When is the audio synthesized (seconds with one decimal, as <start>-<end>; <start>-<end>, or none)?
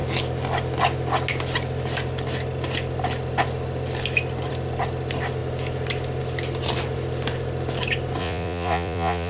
8.2-9.3